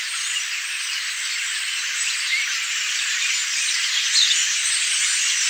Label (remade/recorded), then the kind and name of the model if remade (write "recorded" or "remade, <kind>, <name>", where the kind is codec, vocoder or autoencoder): recorded